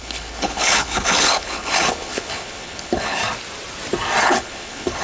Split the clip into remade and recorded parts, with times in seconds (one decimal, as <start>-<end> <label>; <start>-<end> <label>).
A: 0.0-3.2 remade; 3.2-4.2 recorded; 4.2-5.0 remade